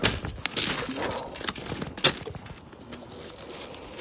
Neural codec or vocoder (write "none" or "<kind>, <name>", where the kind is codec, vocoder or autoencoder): none